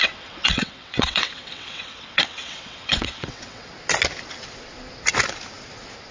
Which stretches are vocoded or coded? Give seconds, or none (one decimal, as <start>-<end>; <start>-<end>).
0.0-3.7